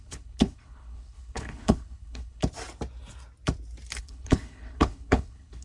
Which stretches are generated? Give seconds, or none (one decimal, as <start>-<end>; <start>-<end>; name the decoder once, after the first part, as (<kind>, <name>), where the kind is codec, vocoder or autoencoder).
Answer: 0.0-2.4 (codec, HILCodec); 4.0-5.6

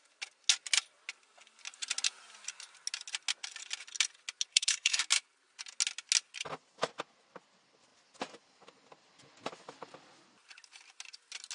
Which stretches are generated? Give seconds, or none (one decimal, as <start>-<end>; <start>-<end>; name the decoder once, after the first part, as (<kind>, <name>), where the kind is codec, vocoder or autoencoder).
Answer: 4.5-5.0 (codec, SNAC)